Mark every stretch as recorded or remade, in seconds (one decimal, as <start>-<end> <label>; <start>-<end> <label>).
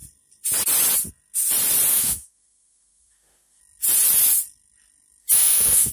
0.0-1.9 recorded; 1.9-3.6 remade; 3.6-5.2 recorded; 5.2-5.9 remade